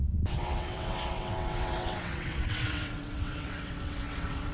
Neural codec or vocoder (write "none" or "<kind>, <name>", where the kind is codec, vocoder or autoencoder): vocoder, WaveNeXt